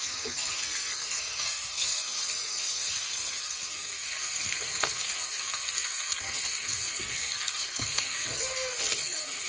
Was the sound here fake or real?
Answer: fake